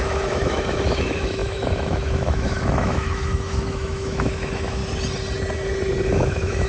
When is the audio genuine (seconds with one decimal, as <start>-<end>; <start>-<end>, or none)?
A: 4.8-6.1